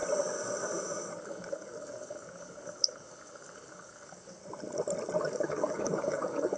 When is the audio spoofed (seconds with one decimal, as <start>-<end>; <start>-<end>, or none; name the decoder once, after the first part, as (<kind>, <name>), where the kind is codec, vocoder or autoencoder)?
1.2-4.4 (codec, DAC); 5.2-6.6